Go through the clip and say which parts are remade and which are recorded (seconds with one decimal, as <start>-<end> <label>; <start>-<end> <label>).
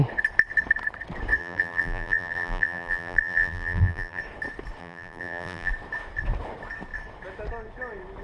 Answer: 0.0-1.4 recorded; 1.4-4.2 remade; 4.2-4.8 recorded; 4.8-5.7 remade; 5.7-8.2 recorded